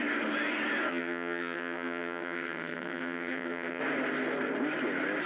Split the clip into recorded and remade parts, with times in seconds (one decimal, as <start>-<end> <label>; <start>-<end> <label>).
0.0-0.9 recorded; 0.9-3.8 remade; 3.8-5.3 recorded

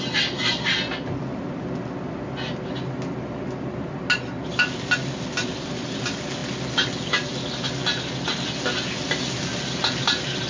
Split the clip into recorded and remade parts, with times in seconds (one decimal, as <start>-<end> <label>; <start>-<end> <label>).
0.0-10.5 recorded

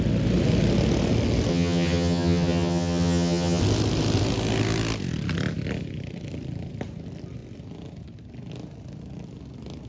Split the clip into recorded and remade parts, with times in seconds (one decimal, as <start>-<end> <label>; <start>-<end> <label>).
0.0-1.5 recorded; 1.5-3.6 remade; 3.6-9.9 recorded

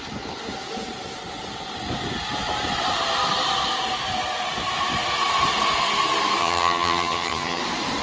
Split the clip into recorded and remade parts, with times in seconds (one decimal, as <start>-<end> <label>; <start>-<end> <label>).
0.0-6.4 recorded; 6.4-7.6 remade; 7.6-8.0 recorded

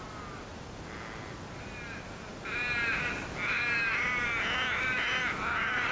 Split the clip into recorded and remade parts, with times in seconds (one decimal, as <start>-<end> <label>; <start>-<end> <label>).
0.0-5.9 recorded

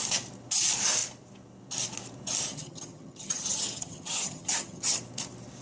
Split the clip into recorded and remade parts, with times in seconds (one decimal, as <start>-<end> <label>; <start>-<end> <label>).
0.0-2.5 recorded; 2.5-5.0 remade; 5.0-5.6 recorded

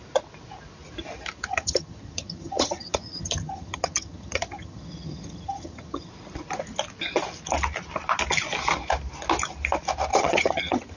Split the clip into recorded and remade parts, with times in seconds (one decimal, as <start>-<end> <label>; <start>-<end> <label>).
0.0-1.5 recorded; 1.5-6.1 remade; 6.1-10.1 recorded; 10.1-11.0 remade

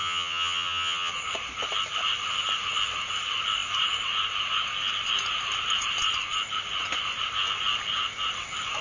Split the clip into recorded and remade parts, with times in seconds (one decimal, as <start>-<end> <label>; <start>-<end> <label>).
0.0-1.1 remade; 1.1-8.8 recorded